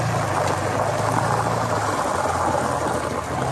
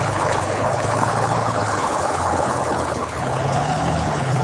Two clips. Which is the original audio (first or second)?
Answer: first